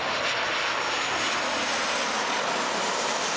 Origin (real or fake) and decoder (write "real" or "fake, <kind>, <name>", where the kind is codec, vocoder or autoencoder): real